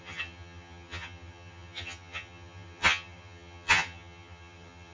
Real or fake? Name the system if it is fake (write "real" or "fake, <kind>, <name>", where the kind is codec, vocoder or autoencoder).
fake, vocoder, HiFi-GAN